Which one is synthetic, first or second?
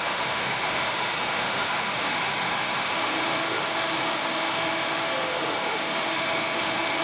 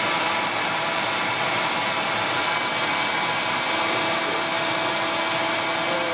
first